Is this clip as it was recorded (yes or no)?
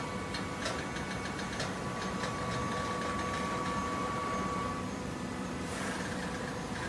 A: yes